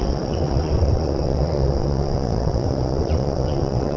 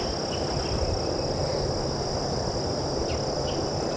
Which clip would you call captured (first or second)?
second